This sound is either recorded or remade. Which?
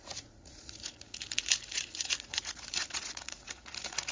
remade